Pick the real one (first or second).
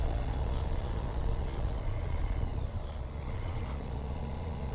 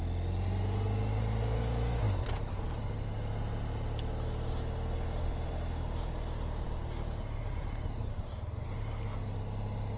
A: second